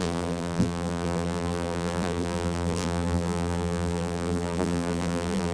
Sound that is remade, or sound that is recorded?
remade